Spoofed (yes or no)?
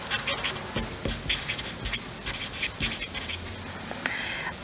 no